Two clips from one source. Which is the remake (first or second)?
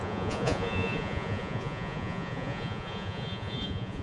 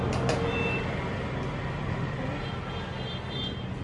first